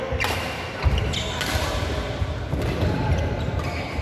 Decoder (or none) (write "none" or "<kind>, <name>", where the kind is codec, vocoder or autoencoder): none